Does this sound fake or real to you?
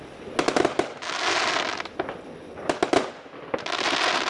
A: real